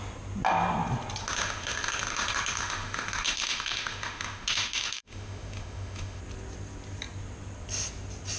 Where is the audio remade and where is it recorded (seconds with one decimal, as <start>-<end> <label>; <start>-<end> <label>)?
0.0-1.2 recorded; 1.2-6.2 remade; 6.2-8.4 recorded